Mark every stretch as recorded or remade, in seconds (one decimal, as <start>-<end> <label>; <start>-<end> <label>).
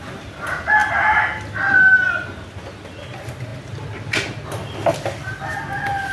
0.0-6.1 recorded